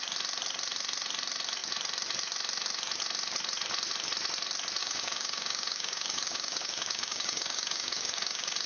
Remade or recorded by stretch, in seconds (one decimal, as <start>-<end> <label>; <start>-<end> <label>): 0.0-4.8 recorded; 4.8-8.7 remade